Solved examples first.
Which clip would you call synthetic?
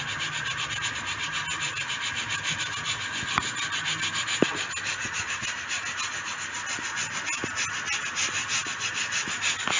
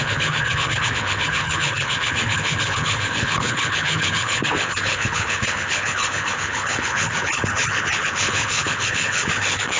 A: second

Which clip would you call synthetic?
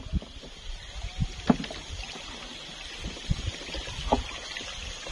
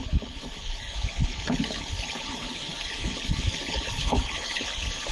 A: second